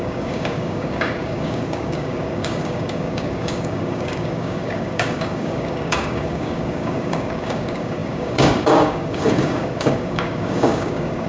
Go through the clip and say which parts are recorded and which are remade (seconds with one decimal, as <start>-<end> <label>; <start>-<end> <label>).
0.0-11.3 remade